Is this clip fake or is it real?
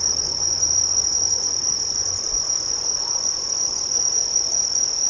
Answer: fake